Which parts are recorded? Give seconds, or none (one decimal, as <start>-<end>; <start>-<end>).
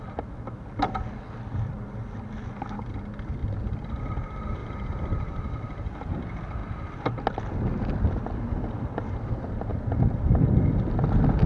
0.0-3.4; 4.0-4.6; 6.1-11.5